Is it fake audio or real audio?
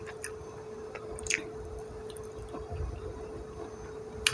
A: real